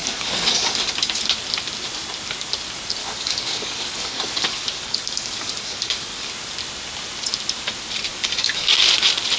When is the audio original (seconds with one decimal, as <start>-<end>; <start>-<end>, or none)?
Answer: 0.9-3.0; 6.3-8.1; 8.8-9.4